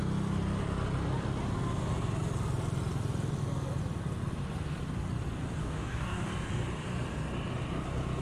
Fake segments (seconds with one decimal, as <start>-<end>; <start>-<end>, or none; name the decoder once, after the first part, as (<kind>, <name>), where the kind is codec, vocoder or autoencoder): 5.6-6.3 (codec, DAC)